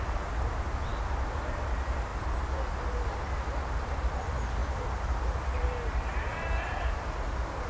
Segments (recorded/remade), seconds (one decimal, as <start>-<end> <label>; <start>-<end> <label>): 0.0-7.7 recorded